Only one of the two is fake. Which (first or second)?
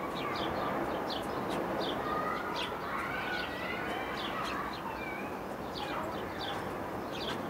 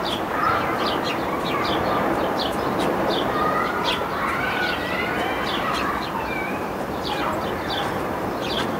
second